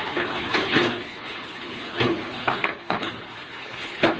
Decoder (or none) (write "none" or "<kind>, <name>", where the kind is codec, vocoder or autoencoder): codec, HILCodec